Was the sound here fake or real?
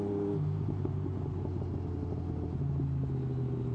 real